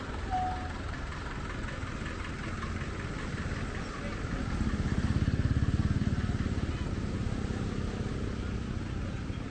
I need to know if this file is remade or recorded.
recorded